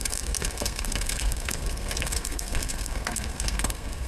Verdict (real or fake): fake